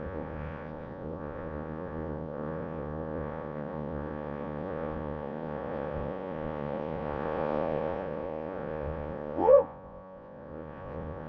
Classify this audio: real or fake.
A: fake